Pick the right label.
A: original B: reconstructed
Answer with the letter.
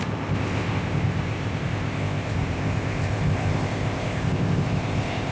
B